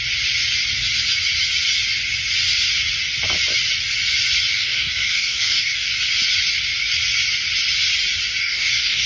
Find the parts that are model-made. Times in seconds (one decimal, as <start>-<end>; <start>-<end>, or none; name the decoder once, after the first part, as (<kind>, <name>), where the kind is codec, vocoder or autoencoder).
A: 4.5-5.9 (codec, DAC); 8.4-9.1